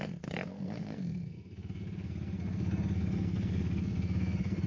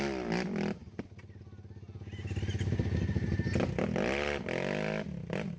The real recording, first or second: second